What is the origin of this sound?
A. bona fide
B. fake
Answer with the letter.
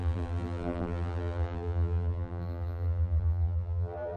B